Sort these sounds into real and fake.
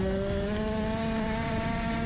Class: real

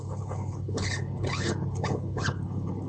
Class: fake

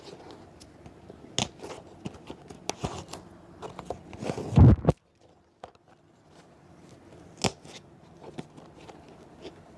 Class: real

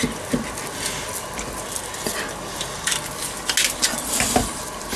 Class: real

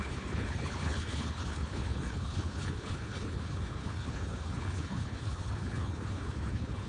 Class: fake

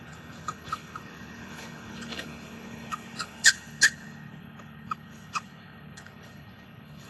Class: fake